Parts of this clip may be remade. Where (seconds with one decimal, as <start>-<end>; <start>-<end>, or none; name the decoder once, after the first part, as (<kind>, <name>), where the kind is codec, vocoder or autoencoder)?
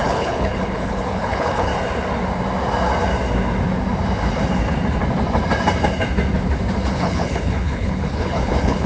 0.0-1.7 (codec, HILCodec); 6.9-8.9